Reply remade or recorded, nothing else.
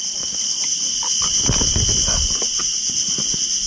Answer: recorded